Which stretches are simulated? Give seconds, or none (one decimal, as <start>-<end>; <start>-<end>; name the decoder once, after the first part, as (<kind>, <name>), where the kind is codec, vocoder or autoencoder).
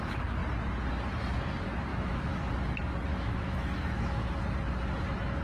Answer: 1.9-2.5 (autoencoder, DAC-VAE); 3.1-4.3